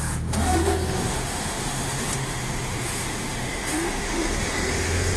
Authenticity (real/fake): fake